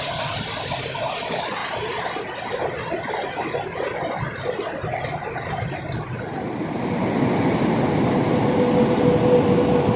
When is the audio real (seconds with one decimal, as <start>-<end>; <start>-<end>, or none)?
0.0-10.0